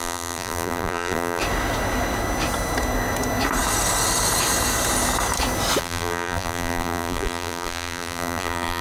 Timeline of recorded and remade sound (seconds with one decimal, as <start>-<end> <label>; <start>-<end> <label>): 0.0-1.4 remade; 1.4-5.8 recorded; 5.8-8.8 remade

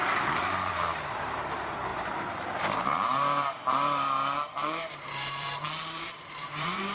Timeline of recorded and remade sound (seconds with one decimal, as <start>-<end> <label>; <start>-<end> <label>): 0.0-0.7 recorded; 0.7-6.9 remade

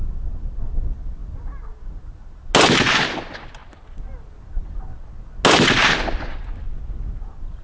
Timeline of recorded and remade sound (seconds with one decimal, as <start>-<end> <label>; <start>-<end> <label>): 0.0-7.6 recorded

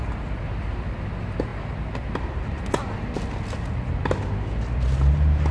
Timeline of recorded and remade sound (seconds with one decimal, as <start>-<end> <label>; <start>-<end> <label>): 0.0-5.5 recorded

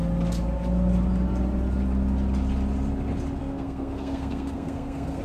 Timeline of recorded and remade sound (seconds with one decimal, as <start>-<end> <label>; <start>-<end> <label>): 0.0-3.4 recorded; 3.4-5.2 remade